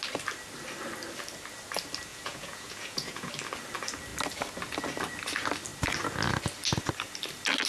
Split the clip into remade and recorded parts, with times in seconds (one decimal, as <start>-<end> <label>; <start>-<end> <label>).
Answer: 0.0-2.1 recorded; 2.1-3.3 remade; 3.3-7.7 recorded